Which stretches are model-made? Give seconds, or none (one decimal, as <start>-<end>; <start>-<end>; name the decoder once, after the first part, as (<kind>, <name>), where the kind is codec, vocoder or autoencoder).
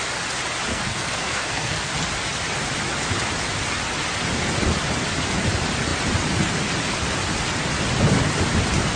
0.7-1.9 (codec, SNAC)